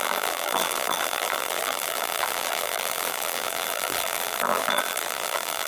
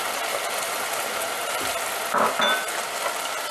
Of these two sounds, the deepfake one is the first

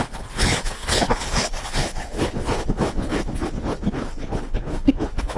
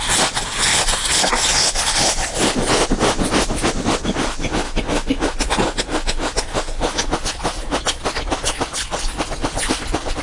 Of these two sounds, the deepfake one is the first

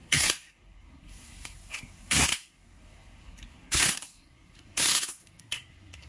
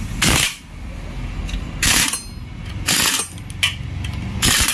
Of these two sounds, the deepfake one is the first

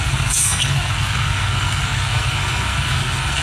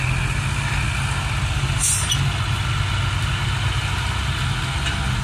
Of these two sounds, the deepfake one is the first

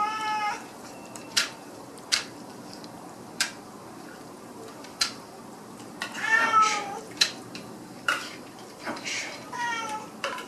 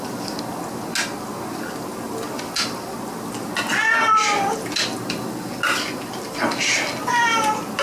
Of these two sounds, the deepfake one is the first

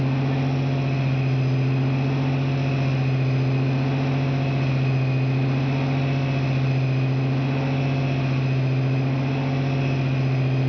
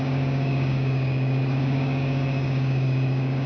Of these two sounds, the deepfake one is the second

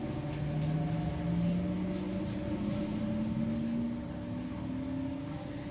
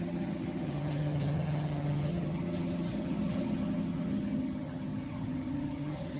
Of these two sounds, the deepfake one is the second